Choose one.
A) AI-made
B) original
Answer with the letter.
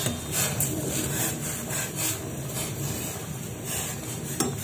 B